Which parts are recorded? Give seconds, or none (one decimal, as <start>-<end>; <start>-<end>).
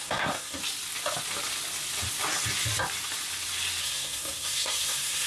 0.6-3.8